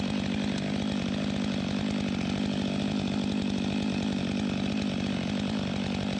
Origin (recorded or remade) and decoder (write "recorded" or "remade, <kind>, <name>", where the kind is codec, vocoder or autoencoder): recorded